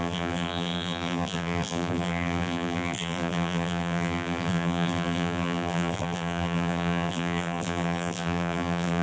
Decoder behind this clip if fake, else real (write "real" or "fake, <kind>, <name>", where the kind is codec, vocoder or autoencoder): fake, vocoder, BigVGAN v2